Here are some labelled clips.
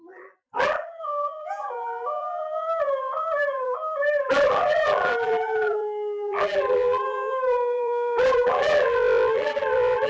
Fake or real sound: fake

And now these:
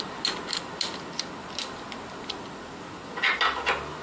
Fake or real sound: real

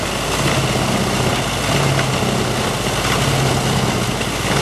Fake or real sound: real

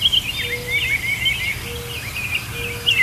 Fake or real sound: real